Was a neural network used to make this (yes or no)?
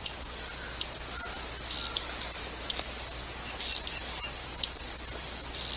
no